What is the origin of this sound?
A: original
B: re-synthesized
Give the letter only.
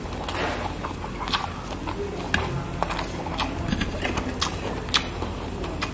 A